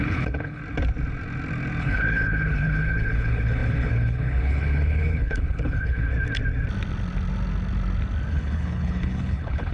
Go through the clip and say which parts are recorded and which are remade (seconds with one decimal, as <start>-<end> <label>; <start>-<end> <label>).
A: 0.0-0.6 remade; 0.6-1.8 recorded; 1.8-6.1 remade; 6.1-8.3 recorded; 8.3-9.7 remade